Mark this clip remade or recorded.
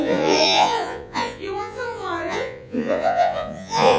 remade